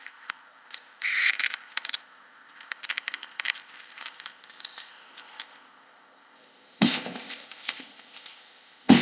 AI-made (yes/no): yes